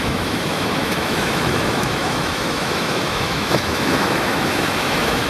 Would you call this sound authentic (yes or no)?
no